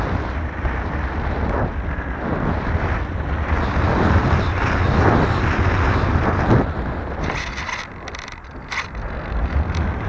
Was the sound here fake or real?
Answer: real